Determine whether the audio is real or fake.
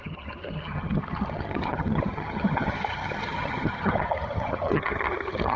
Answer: fake